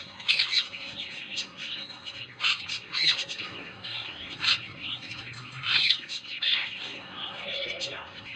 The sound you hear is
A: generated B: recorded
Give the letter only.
A